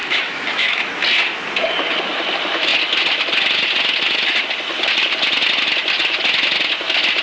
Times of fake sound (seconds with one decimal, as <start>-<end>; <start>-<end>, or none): 0.0-0.8